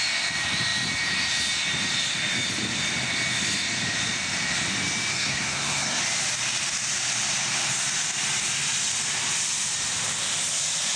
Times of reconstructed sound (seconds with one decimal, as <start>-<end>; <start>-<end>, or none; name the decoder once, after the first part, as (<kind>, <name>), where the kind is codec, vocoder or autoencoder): 5.1-6.0 (codec, SNAC)